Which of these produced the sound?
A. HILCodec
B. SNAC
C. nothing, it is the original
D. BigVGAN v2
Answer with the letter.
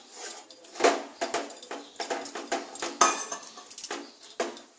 C